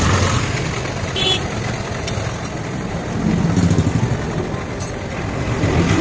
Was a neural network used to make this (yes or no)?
no